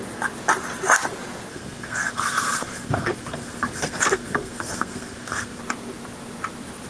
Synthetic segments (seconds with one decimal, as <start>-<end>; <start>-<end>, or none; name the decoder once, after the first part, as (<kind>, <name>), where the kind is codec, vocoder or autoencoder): 1.5-5.6 (codec, SNAC)

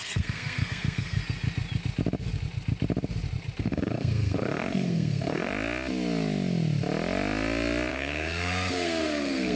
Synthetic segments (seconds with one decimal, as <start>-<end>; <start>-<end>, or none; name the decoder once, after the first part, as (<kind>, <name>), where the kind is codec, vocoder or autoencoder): 0.0-1.2 (codec, SNAC); 3.6-5.5; 7.9-9.6

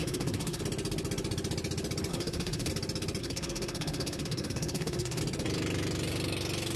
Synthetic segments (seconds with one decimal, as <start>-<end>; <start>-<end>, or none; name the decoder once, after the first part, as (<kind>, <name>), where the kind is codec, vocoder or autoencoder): 0.0-0.6 (codec, SNAC); 2.1-2.7; 3.2-5.2

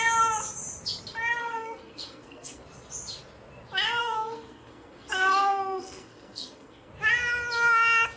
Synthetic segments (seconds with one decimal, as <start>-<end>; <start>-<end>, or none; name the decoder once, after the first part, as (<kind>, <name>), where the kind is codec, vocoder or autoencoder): 1.4-2.6 (codec, SNAC); 4.0-6.9

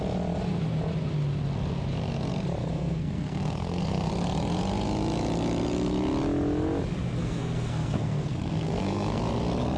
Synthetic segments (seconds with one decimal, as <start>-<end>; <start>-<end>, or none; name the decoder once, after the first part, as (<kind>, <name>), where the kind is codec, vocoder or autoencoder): 2.6-4.1 (codec, SNAC); 7.2-9.2

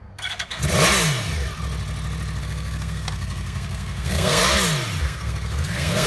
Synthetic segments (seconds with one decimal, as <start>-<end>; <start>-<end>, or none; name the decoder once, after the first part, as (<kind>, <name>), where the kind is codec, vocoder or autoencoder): 0.0-0.6 (codec, SNAC); 2.4-4.4; 5.0-6.1

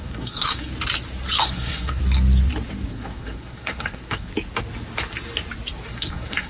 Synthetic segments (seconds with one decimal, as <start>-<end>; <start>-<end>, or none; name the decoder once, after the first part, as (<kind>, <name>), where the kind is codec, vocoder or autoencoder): 0.0-0.7 (codec, SNAC); 1.5-2.0; 2.9-4.3; 5.9-6.5